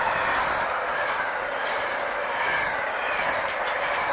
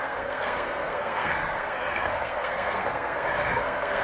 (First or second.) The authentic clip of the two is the first